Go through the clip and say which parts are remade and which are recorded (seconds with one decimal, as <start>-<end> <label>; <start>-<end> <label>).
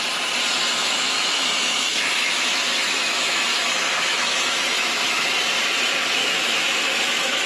0.0-0.8 recorded; 0.8-5.3 remade; 5.3-6.2 recorded; 6.2-7.5 remade